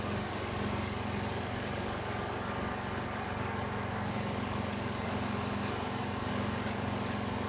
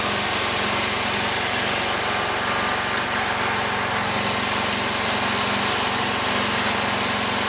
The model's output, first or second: first